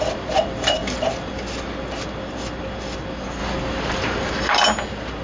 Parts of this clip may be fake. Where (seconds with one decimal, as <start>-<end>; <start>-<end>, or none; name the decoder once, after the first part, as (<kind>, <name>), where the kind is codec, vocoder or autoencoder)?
none